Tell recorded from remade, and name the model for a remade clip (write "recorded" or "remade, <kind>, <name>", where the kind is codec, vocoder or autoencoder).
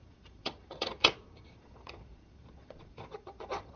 remade, vocoder, Vocos